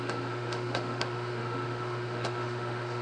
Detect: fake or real fake